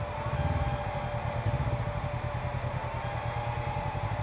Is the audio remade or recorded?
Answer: recorded